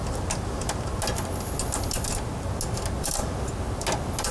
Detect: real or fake real